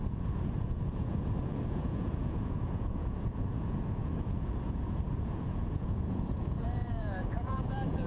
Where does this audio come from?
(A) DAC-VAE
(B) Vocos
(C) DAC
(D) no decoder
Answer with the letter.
B